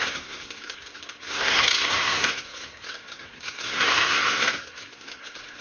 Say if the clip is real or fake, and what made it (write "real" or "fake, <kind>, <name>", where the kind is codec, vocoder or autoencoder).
fake, codec, SNAC